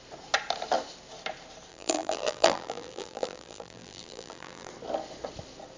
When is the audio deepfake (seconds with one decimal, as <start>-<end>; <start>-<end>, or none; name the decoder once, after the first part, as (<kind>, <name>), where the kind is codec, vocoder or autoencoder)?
1.7-4.7 (vocoder, BigVGAN v2)